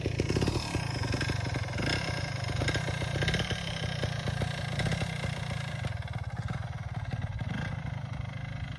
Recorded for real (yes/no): yes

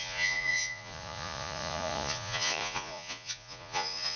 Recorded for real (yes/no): no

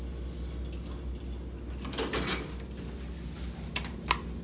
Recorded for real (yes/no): yes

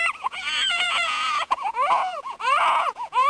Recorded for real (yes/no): no